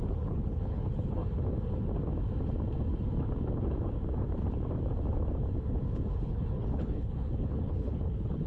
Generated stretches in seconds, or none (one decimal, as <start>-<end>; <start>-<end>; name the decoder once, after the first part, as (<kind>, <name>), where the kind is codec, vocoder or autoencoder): 0.0-1.2 (codec, HILCodec); 6.2-8.5